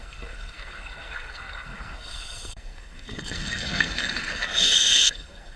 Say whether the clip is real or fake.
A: fake